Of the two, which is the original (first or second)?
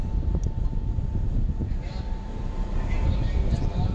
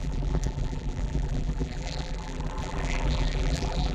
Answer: first